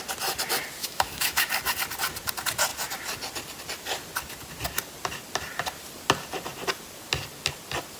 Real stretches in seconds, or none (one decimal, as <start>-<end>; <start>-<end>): 0.0-0.8; 1.5-8.0